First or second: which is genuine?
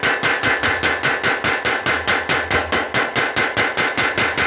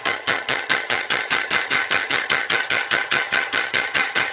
first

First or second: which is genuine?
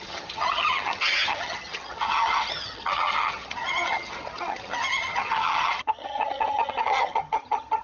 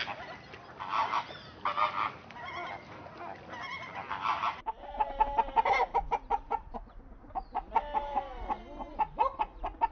second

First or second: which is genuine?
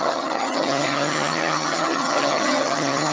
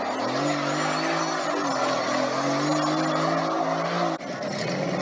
second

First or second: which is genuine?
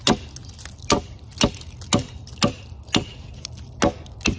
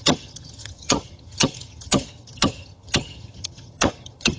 first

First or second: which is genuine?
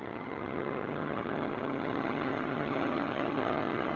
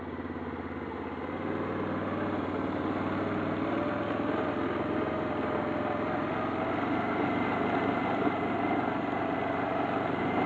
second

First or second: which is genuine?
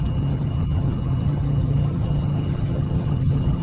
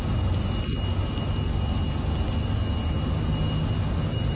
second